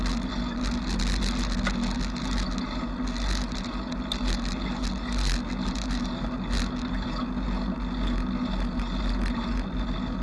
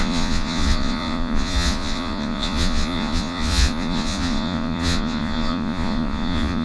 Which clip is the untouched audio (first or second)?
first